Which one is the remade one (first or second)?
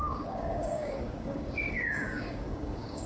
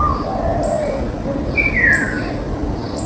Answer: first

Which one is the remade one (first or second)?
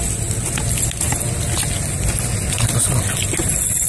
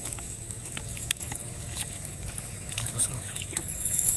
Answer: second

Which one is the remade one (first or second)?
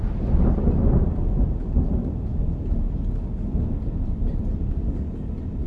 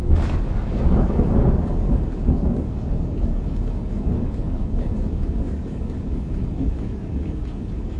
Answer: second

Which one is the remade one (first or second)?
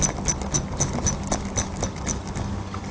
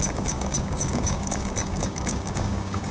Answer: second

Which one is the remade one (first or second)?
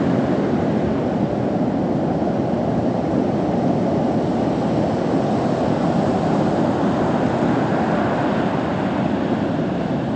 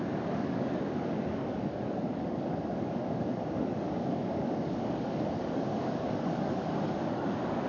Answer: second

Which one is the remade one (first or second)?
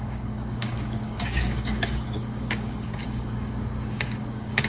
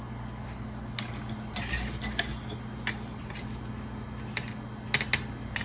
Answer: first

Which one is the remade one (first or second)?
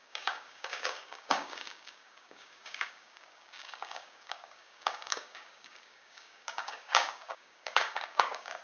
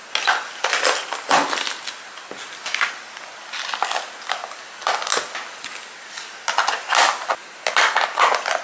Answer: first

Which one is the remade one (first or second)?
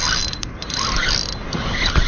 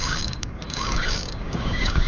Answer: second